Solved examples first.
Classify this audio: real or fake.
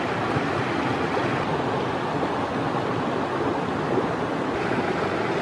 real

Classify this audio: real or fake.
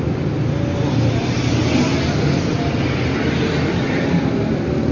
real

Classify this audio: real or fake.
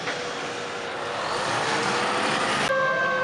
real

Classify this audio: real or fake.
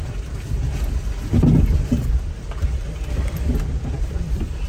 real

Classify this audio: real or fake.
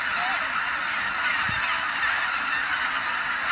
real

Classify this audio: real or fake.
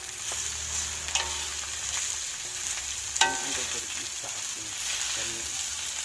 real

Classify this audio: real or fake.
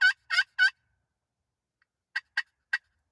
real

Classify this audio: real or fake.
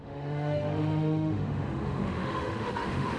fake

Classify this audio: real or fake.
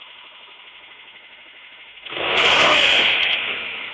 fake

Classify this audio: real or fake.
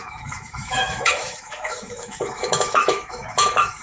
fake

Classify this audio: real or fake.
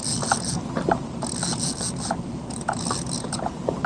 real